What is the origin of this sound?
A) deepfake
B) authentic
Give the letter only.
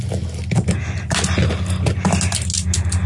B